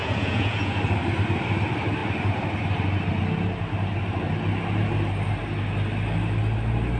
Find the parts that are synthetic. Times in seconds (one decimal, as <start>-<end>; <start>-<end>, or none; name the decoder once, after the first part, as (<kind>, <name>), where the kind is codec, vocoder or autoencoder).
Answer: 0.0-0.8 (vocoder, Vocos)